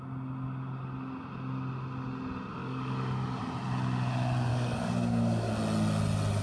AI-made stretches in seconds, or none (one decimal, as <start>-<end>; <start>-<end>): 2.6-3.4; 4.5-5.5